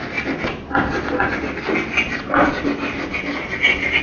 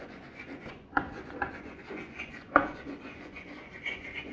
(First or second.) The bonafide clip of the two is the first